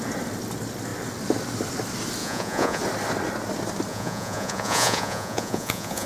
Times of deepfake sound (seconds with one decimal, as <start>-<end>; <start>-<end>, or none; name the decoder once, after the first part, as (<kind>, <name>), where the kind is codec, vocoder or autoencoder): 2.2-2.8 (vocoder, Vocos); 3.9-6.1